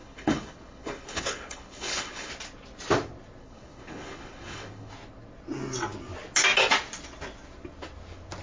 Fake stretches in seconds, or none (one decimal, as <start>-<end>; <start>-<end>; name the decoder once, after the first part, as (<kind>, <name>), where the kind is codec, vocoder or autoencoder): 0.0-2.3 (codec, HILCodec); 3.4-4.9